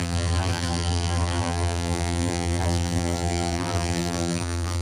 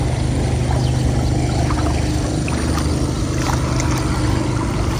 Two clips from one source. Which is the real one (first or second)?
second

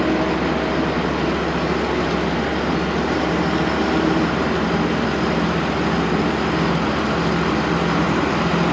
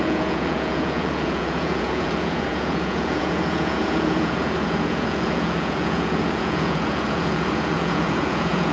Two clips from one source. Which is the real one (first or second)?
first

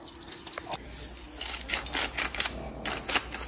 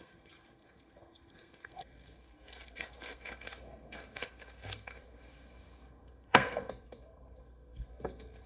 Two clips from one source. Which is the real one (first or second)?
first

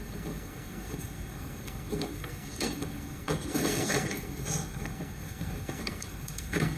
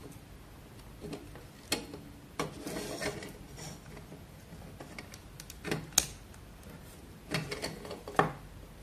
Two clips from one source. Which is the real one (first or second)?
second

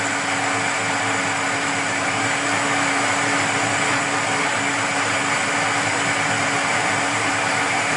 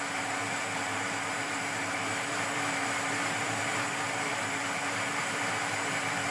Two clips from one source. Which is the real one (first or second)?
first